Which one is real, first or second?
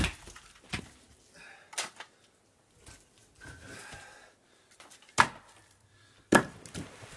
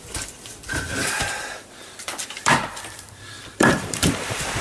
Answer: first